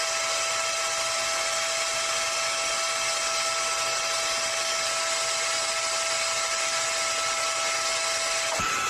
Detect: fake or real real